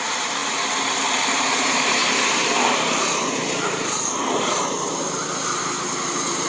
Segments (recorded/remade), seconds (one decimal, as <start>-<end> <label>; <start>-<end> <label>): 0.0-0.4 remade; 0.4-1.4 recorded; 1.4-6.5 remade

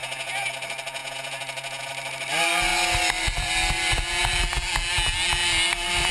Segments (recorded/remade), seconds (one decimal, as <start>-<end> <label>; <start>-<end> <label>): 0.0-0.5 remade; 0.5-1.0 recorded; 1.0-1.9 remade; 1.9-6.1 recorded

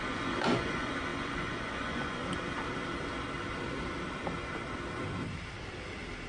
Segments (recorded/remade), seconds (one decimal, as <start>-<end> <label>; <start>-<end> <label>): 0.0-2.2 remade; 2.2-6.3 recorded

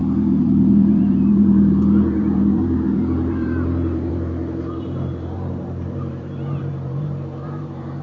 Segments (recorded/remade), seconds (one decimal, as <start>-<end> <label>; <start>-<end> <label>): 0.0-8.0 remade

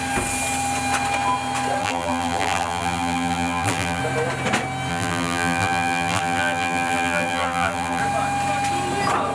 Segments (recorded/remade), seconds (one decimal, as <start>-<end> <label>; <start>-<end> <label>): 0.0-1.8 recorded; 1.8-4.0 remade; 4.0-4.9 recorded; 4.9-8.0 remade; 8.0-9.3 recorded

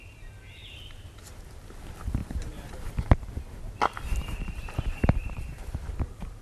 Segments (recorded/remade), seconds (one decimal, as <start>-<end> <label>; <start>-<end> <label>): 0.0-2.2 recorded; 2.2-2.9 remade; 2.9-4.1 recorded; 4.1-6.4 remade